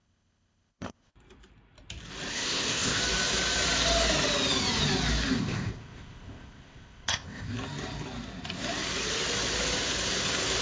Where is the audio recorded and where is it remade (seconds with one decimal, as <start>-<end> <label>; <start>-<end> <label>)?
0.0-1.1 remade; 1.1-2.3 recorded; 2.3-3.0 remade; 3.0-5.4 recorded; 5.4-7.5 remade; 7.5-10.6 recorded